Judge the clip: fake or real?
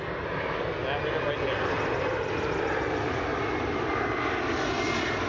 real